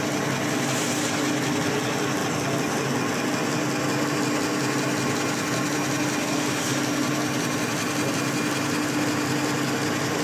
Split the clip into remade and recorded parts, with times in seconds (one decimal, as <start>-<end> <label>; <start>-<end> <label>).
0.0-10.2 recorded